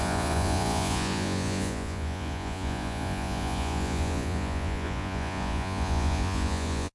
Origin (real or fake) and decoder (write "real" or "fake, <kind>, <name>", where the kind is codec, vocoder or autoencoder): fake, vocoder, Vocos